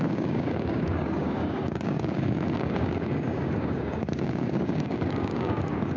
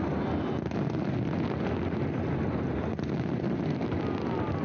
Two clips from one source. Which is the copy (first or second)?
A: first